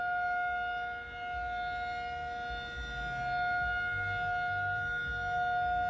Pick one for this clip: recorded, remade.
recorded